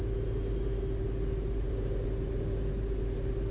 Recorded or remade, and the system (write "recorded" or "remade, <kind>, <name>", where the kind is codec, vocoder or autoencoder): recorded